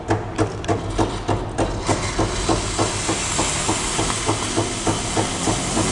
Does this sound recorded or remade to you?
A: recorded